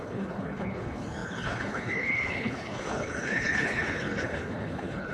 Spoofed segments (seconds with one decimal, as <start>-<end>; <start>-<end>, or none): 0.0-5.1